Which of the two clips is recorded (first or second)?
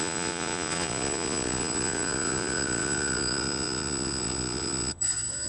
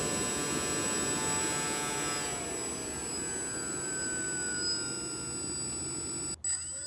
second